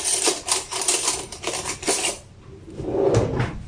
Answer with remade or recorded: recorded